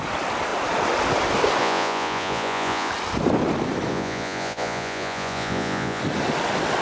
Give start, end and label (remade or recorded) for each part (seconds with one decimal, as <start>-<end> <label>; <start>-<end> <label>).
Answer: 0.0-1.6 recorded; 1.6-2.9 remade; 2.9-3.9 recorded; 3.9-6.0 remade; 6.0-6.8 recorded

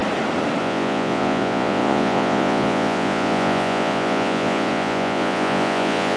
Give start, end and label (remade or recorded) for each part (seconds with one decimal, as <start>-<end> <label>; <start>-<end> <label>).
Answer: 0.0-0.6 recorded; 0.6-6.2 remade

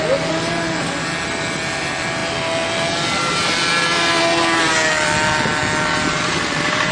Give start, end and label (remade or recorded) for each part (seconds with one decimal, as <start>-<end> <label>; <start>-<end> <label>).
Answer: 0.0-6.9 recorded

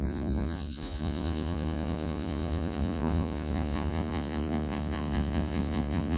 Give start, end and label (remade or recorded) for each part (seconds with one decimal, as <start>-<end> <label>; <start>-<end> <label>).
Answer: 0.0-6.2 remade

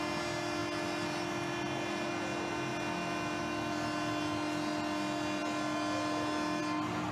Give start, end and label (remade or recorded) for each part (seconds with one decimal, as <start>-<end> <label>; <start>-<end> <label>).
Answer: 0.0-7.1 recorded